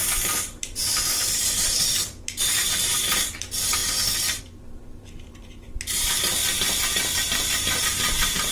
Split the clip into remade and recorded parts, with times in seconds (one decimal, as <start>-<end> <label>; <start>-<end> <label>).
0.0-3.8 remade; 3.8-4.4 recorded; 4.4-6.4 remade; 6.4-7.8 recorded; 7.8-8.5 remade